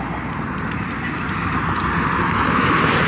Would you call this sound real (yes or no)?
yes